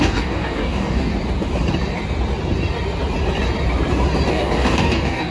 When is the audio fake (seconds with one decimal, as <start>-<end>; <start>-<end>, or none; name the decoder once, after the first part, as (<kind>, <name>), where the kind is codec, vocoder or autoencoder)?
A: 0.0-1.1 (codec, DAC); 4.3-5.3